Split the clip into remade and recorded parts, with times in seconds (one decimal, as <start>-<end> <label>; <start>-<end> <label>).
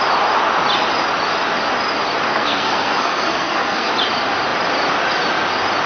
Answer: 0.0-2.3 recorded; 2.3-3.9 remade; 3.9-5.9 recorded